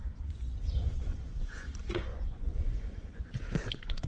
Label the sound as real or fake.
fake